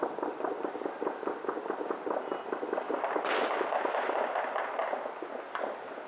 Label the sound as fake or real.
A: real